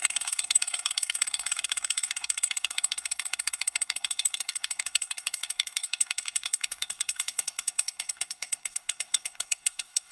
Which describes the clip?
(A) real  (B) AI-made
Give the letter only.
B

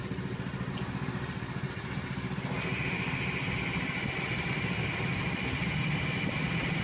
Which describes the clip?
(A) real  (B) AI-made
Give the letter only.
A